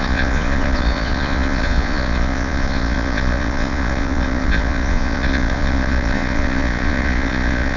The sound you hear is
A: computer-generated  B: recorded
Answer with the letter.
A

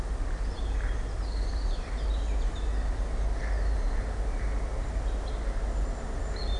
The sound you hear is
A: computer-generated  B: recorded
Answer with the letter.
B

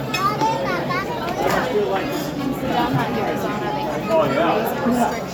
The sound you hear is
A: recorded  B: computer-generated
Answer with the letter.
A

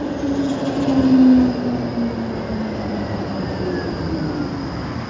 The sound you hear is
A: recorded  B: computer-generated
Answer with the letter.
A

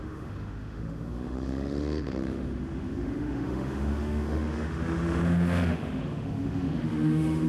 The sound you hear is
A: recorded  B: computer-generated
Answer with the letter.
B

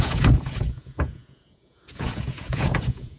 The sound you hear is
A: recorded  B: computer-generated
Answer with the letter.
B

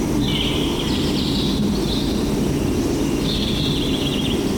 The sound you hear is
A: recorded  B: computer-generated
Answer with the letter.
A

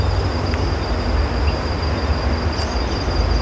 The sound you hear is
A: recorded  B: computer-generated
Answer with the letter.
A